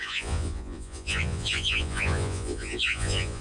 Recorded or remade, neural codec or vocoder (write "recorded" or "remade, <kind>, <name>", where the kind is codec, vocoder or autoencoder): remade, vocoder, Vocos